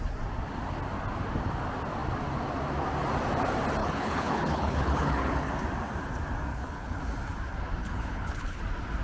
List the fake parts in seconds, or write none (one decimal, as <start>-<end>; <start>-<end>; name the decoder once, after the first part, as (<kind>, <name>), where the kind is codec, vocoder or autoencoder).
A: 3.8-5.5 (codec, HILCodec); 6.5-7.0; 7.8-8.6